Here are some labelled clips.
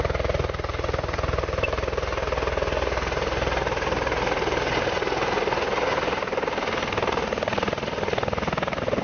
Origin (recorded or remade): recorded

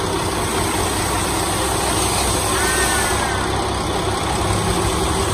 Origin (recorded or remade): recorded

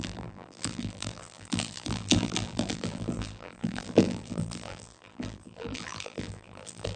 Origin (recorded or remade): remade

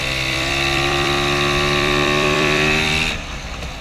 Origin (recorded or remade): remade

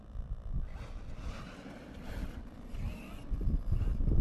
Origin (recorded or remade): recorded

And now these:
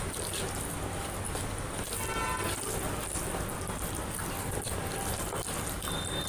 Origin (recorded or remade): recorded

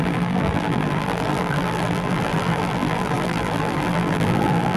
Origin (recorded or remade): remade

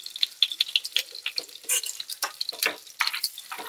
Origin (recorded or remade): recorded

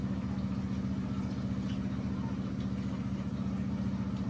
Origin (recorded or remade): recorded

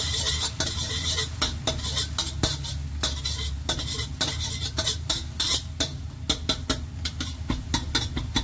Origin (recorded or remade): recorded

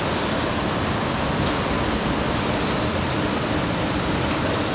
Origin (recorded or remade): remade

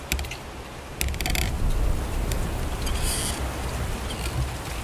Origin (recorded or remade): recorded